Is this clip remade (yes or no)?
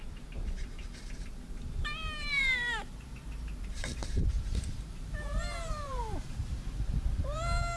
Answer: yes